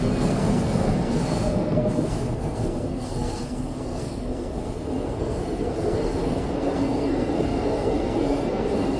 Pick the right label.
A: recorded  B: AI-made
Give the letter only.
B